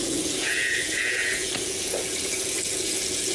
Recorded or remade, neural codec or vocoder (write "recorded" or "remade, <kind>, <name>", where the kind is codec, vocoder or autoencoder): remade, vocoder, Vocos